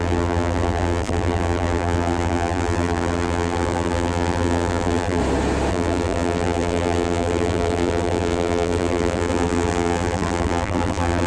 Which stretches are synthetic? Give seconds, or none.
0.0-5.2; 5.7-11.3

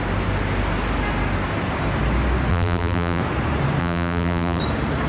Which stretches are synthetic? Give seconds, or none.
2.5-3.2; 3.8-4.6